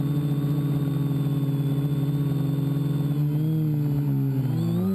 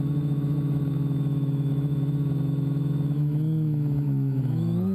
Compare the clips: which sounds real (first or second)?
first